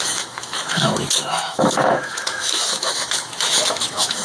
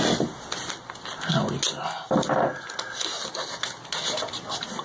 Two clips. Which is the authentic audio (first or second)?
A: second